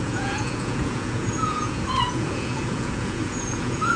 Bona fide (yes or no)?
no